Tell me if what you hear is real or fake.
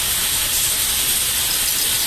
real